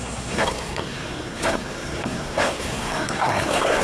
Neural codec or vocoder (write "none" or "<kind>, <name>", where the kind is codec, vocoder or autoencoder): codec, SNAC